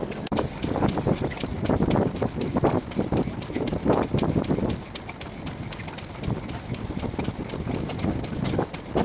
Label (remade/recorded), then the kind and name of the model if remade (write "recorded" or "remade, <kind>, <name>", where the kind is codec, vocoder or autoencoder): recorded